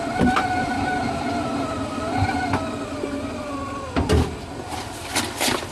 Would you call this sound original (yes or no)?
yes